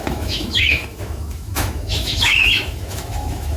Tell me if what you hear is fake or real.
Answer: fake